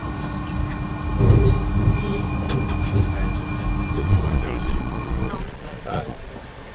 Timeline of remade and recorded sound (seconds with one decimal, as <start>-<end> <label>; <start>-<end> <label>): 0.0-4.0 recorded; 4.0-6.3 remade; 6.3-6.7 recorded